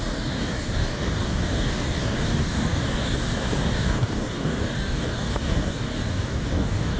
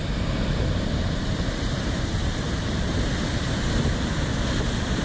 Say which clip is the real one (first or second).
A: second